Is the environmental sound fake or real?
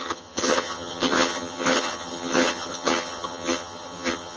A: fake